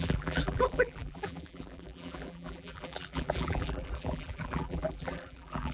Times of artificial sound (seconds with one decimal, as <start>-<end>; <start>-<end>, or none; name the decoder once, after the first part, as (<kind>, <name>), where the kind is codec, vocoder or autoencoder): 0.0-5.7 (vocoder, BigVGAN v2)